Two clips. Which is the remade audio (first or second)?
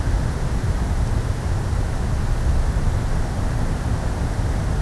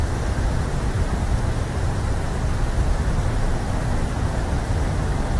second